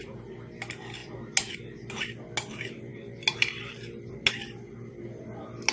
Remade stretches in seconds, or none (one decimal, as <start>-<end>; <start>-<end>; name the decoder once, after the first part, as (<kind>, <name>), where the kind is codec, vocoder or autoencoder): none